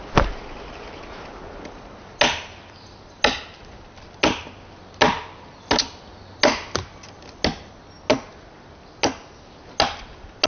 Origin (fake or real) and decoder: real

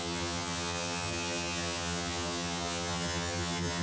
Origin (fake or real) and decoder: fake, vocoder, HiFi-GAN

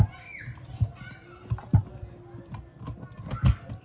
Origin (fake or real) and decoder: real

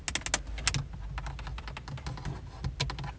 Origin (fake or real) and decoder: real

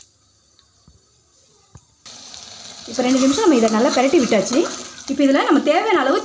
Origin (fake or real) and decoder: real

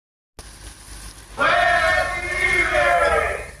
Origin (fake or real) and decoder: real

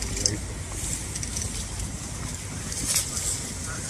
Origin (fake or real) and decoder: real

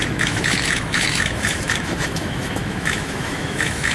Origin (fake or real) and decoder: fake, autoencoder, DAC-VAE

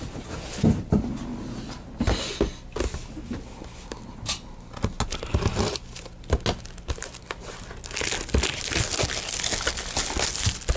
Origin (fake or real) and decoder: real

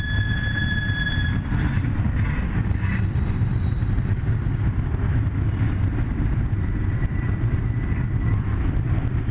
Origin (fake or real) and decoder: real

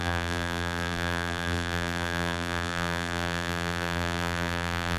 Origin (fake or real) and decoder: fake, vocoder, BigVGAN v2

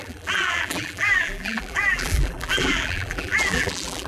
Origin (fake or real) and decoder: fake, vocoder, BigVGAN v2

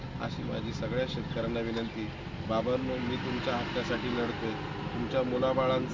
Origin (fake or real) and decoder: real